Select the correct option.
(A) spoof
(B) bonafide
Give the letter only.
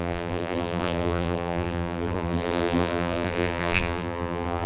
A